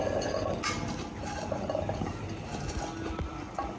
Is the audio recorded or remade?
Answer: recorded